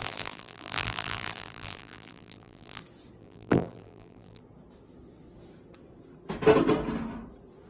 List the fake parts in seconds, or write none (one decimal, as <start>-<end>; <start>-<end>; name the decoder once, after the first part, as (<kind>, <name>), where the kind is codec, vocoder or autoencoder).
0.0-2.8 (vocoder, BigVGAN v2); 3.2-4.4